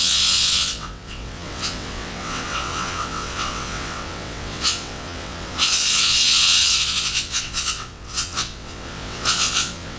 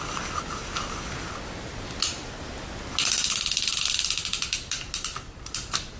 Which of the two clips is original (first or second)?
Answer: second